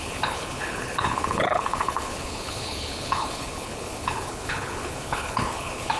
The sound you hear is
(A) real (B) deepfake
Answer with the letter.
B